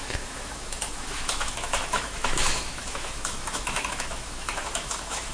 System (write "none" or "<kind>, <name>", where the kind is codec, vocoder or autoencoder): autoencoder, DAC-VAE